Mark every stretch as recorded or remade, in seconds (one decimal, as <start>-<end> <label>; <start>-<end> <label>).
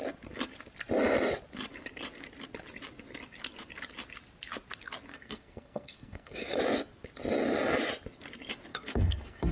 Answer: 0.0-5.1 recorded; 5.1-6.6 remade; 6.6-8.7 recorded; 8.7-9.5 remade